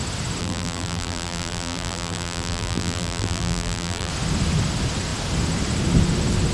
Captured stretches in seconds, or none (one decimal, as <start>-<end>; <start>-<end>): 0.0-0.4; 4.1-6.5